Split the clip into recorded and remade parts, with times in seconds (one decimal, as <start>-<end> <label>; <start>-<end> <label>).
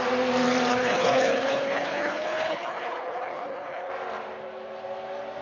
0.0-0.7 recorded; 0.7-3.9 remade; 3.9-5.4 recorded